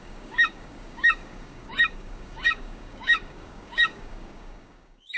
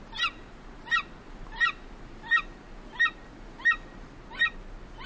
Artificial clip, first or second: first